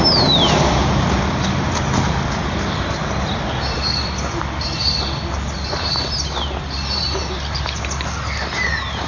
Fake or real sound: real